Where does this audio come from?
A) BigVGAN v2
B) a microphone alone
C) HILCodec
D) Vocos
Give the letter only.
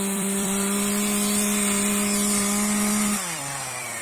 A